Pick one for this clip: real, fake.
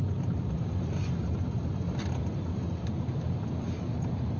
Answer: real